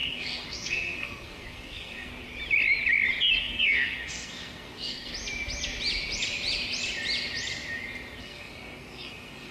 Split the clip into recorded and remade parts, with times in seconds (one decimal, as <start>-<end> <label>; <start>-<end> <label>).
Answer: 0.0-2.1 remade; 2.1-3.4 recorded; 3.4-5.1 remade; 5.1-8.2 recorded; 8.2-9.5 remade